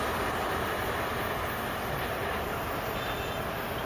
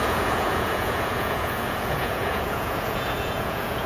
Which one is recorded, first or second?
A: first